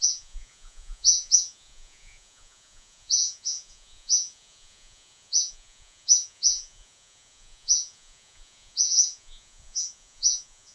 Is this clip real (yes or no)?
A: no